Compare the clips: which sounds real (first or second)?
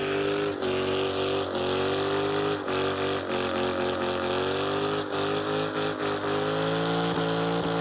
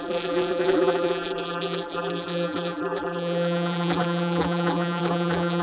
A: first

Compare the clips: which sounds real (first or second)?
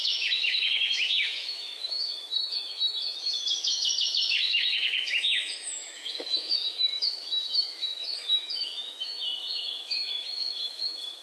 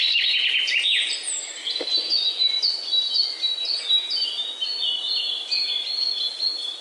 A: second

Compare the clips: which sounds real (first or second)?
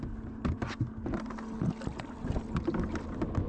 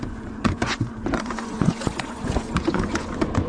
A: first